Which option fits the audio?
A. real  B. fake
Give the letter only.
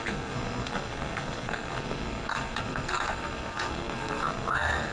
B